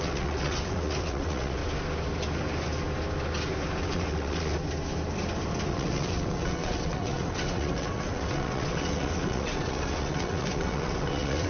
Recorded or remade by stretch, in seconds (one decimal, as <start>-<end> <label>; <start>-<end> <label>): 0.0-1.6 remade; 1.6-3.8 recorded; 3.8-4.5 remade; 4.5-5.7 recorded; 5.7-11.5 remade